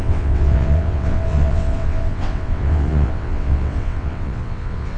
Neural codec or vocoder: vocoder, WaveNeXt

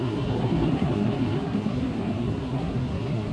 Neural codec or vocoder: codec, SNAC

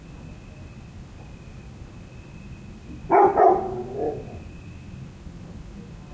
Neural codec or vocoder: none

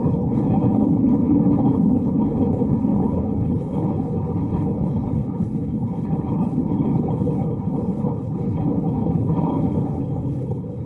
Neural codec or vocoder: codec, HILCodec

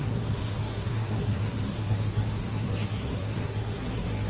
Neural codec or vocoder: codec, SNAC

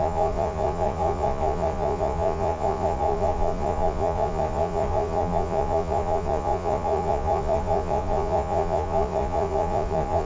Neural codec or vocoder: vocoder, Vocos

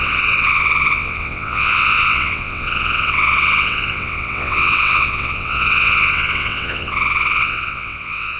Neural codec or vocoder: vocoder, WaveNeXt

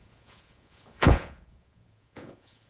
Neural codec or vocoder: vocoder, Vocos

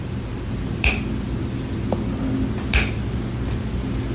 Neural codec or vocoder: none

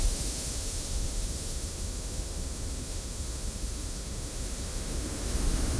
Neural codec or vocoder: autoencoder, DAC-VAE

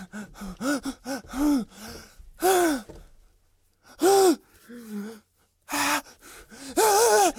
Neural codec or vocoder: none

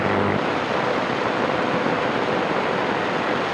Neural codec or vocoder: none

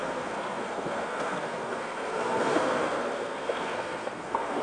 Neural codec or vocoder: codec, SNAC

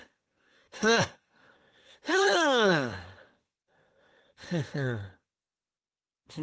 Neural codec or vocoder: codec, SNAC